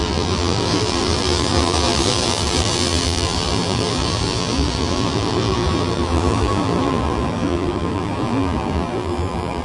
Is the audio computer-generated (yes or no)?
yes